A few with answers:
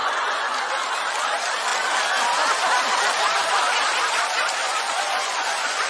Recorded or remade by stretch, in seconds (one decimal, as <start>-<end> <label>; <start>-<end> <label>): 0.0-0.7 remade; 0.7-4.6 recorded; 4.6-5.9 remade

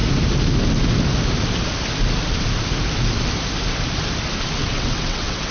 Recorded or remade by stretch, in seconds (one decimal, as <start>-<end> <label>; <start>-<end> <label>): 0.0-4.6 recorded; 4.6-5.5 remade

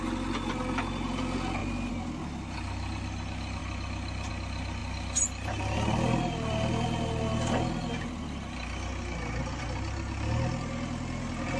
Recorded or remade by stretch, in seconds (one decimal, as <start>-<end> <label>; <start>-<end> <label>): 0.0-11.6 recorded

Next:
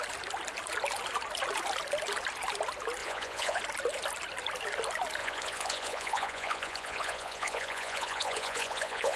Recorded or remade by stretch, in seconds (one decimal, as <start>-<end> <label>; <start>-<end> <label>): 0.0-3.0 recorded; 3.0-3.6 remade; 3.6-5.2 recorded; 5.2-9.2 remade

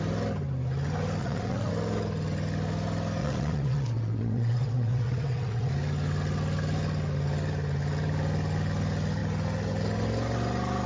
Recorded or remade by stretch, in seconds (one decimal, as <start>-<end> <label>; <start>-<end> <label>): 0.0-1.2 recorded; 1.2-1.7 remade; 1.7-3.2 recorded; 3.2-5.7 remade; 5.7-10.9 recorded